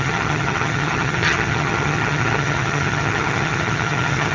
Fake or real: fake